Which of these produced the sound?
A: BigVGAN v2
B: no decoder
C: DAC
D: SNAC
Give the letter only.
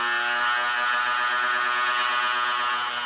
B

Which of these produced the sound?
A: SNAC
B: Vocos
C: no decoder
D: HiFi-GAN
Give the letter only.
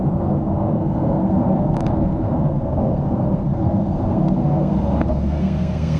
A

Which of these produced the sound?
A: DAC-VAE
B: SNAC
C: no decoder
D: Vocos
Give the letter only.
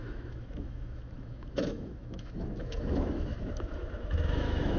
A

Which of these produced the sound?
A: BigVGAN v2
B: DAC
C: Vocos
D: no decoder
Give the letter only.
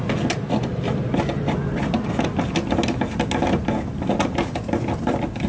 D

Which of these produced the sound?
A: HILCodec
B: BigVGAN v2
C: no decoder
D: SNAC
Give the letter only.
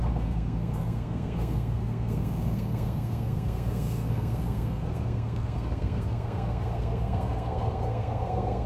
D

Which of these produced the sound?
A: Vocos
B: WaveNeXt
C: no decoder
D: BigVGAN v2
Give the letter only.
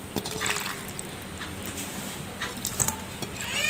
D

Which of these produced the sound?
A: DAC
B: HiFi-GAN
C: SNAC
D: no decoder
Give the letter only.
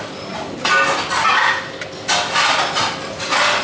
D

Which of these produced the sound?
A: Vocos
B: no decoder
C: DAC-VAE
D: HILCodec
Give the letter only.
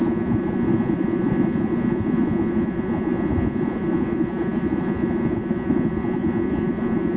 A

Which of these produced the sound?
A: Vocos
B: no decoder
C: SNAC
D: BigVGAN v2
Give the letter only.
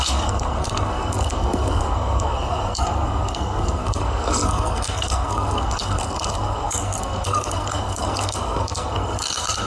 C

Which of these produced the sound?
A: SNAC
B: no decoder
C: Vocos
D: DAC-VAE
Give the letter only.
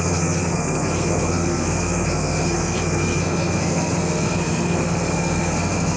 A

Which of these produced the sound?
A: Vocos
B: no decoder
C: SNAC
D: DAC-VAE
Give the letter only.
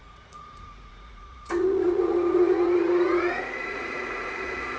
A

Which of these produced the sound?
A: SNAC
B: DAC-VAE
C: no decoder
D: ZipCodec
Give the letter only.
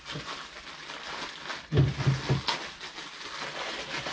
C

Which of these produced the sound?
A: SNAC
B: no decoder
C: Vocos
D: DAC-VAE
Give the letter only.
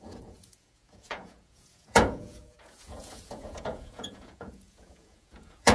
C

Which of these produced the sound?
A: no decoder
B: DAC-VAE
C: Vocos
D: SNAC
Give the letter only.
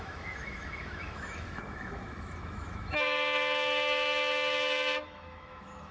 B